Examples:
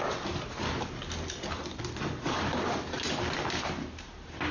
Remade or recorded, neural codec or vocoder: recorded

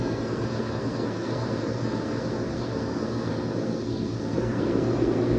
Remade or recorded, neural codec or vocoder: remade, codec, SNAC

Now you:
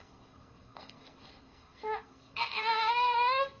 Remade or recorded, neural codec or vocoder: remade, codec, SNAC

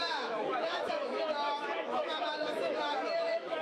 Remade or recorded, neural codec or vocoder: remade, autoencoder, DAC-VAE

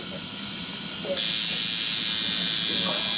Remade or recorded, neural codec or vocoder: recorded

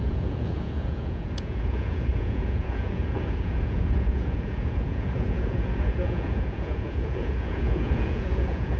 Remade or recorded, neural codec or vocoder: remade, vocoder, Vocos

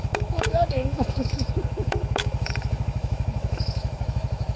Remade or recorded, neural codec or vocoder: remade, autoencoder, DAC-VAE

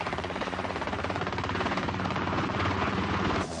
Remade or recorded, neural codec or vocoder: remade, vocoder, Vocos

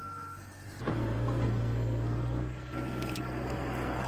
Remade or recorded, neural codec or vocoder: remade, codec, SNAC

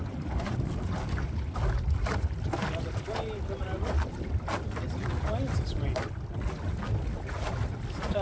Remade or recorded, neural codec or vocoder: recorded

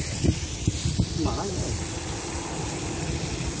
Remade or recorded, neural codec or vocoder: recorded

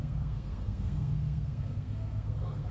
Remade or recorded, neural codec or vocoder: remade, codec, SNAC